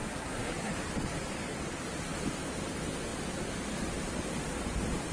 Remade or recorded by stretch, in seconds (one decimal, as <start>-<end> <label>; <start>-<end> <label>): 0.0-0.7 remade; 0.7-5.1 recorded